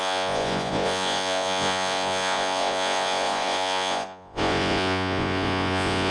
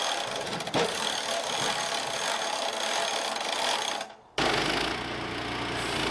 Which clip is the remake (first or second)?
first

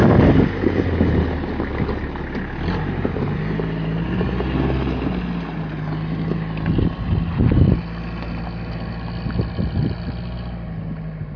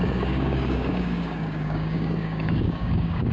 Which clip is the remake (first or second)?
second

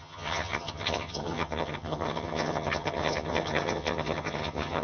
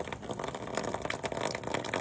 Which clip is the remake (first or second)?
first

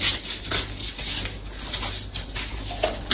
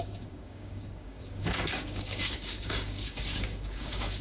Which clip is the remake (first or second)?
second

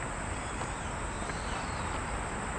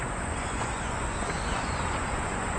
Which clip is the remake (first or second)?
second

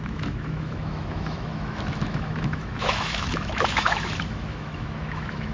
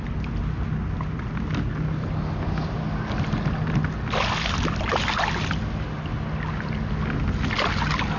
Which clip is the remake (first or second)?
first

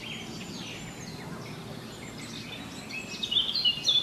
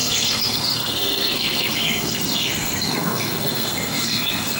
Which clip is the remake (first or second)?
second